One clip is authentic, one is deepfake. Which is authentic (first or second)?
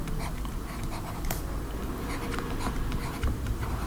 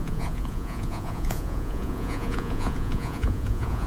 first